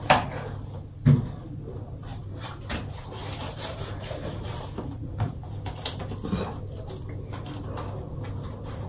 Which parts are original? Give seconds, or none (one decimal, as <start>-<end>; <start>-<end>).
0.0-2.1; 2.6-3.2; 5.4-8.9